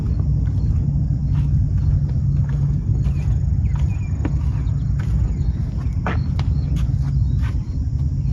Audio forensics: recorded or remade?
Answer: recorded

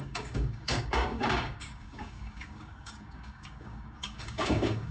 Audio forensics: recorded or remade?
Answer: remade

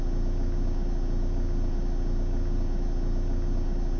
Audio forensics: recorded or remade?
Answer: recorded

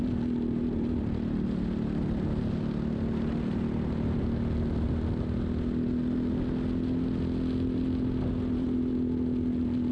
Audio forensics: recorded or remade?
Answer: recorded